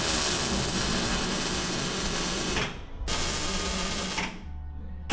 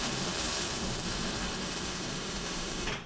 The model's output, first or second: second